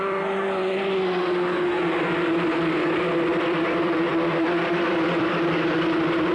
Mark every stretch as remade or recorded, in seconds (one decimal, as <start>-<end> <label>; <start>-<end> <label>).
0.0-0.8 remade; 0.8-1.7 recorded; 1.7-6.3 remade